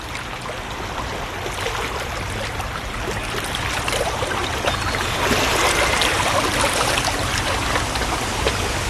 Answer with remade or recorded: recorded